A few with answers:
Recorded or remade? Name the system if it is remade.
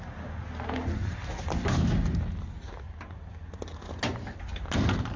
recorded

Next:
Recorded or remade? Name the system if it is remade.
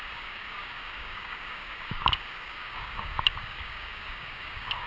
remade, codec, DAC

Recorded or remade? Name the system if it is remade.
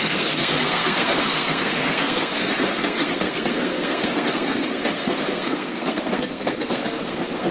remade, codec, SNAC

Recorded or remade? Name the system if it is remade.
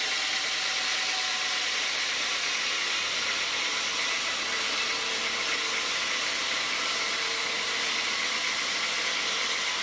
recorded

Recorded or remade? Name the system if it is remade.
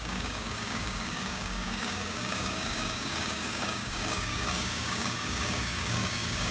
remade, codec, DAC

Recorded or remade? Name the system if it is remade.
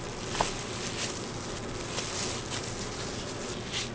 recorded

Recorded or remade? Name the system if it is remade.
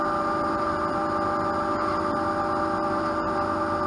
recorded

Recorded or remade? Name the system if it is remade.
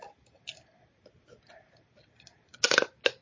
recorded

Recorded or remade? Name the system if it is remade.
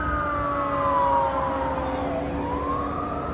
recorded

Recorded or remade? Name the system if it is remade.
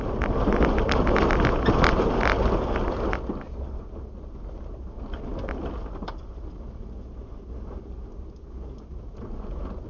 recorded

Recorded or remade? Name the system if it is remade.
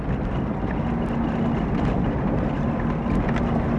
recorded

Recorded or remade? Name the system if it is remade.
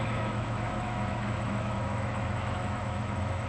remade, autoencoder, DAC-VAE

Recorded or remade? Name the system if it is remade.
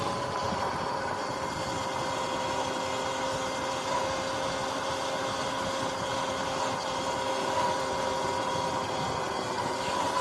recorded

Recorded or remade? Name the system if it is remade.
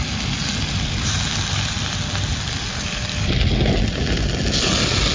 recorded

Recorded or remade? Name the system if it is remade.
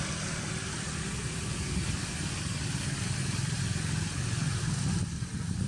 recorded